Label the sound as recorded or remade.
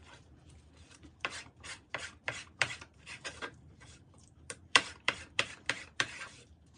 remade